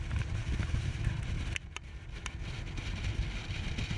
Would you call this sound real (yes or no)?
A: yes